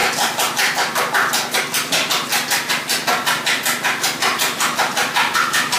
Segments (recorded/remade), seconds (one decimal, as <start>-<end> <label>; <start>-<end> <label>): 0.0-5.8 recorded